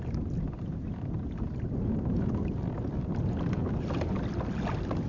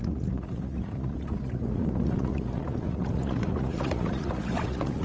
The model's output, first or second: second